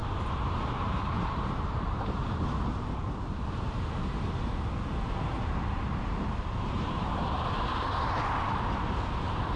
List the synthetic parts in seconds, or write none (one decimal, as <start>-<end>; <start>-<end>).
0.0-3.8; 4.9-7.4